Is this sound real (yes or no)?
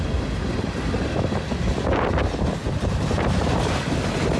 yes